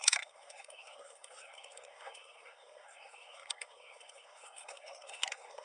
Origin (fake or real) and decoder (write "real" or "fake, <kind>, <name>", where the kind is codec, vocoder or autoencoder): fake, codec, SNAC